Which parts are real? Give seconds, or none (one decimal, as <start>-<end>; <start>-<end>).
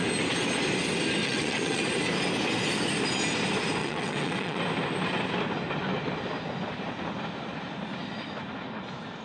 0.0-1.2; 1.8-3.8; 4.6-9.2